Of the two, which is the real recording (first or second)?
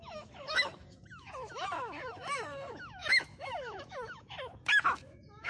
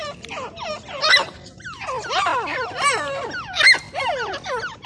second